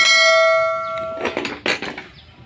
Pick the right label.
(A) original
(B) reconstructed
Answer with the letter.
A